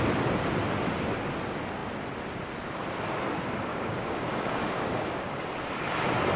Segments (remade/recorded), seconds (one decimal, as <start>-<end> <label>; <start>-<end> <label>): 0.0-3.7 recorded; 3.7-5.4 remade; 5.4-6.4 recorded